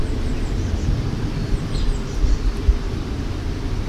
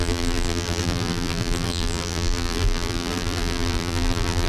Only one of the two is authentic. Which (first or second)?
first